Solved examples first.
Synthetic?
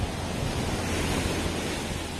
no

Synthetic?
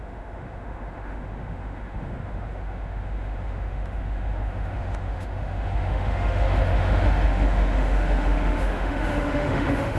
yes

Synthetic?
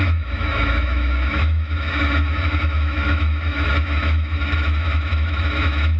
yes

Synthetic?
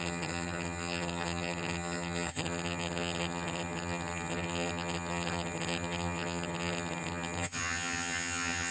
yes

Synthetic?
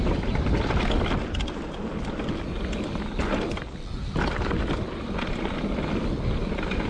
no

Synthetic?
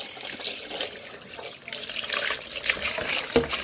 no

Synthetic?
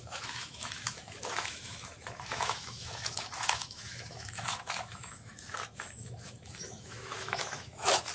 yes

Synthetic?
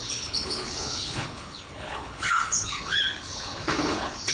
yes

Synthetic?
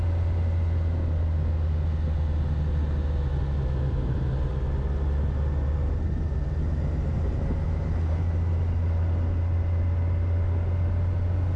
no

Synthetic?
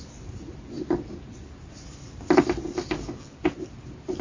no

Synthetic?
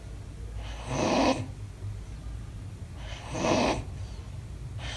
no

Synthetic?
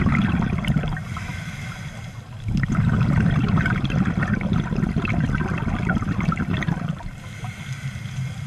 no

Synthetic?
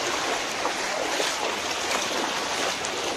no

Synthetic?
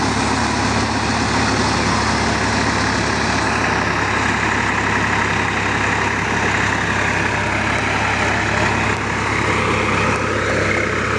no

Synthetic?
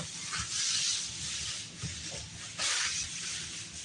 no